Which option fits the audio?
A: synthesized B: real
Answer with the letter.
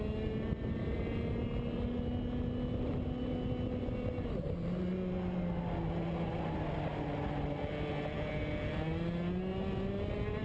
B